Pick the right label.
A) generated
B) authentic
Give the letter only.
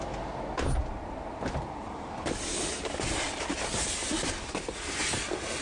B